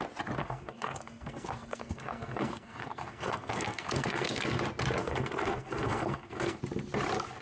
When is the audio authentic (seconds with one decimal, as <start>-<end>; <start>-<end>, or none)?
0.0-0.4; 4.6-5.0; 6.6-7.4